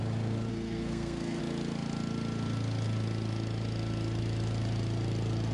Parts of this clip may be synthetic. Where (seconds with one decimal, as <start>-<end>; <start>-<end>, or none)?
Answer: 0.5-1.4